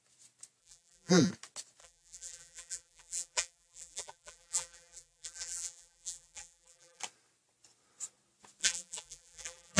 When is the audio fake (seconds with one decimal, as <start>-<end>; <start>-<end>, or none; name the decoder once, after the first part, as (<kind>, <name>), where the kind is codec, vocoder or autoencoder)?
0.6-1.3 (vocoder, BigVGAN v2); 1.8-7.0; 8.6-9.8